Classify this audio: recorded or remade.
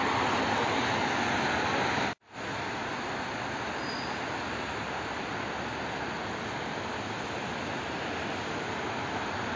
recorded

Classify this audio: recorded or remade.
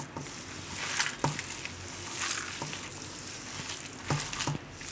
recorded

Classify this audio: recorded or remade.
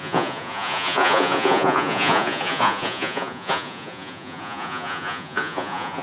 remade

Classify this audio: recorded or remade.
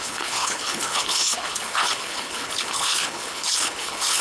remade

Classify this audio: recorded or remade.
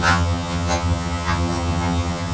remade